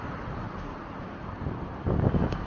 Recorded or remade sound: remade